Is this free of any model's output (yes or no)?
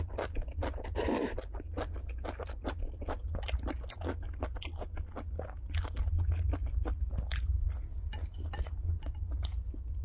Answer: yes